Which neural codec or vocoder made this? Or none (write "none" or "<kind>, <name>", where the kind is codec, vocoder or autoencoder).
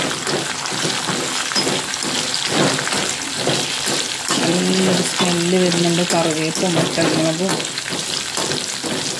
none